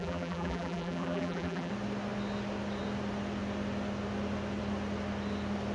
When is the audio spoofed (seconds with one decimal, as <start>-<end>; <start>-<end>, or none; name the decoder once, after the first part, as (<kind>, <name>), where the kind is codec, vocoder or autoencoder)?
0.0-1.7 (vocoder, BigVGAN v2)